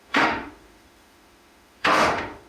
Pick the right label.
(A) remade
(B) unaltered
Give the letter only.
A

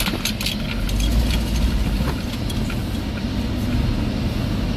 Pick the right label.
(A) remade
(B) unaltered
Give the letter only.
B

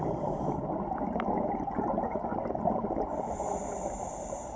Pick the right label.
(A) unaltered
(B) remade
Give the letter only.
A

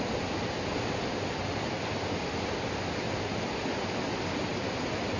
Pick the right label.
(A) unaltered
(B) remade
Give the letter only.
A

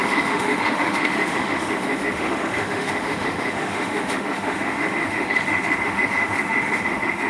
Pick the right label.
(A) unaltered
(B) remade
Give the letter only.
B